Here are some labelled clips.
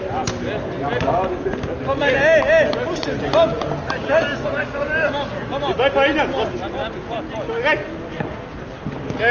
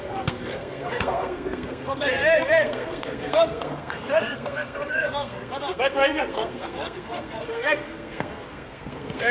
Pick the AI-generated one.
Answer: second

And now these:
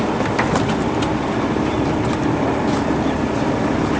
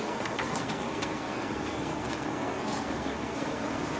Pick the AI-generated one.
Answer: second